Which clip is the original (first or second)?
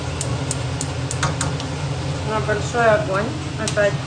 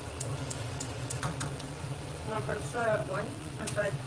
first